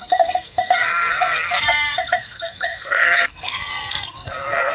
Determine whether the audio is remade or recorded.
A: remade